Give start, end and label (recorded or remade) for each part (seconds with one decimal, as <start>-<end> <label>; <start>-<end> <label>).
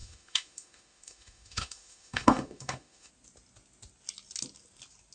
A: 0.0-3.1 remade; 3.1-5.1 recorded